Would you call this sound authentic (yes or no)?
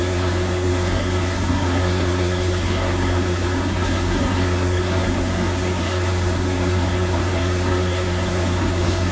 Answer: no